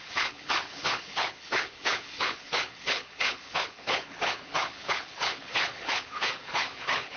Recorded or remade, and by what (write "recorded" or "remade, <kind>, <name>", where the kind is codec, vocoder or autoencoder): remade, codec, HILCodec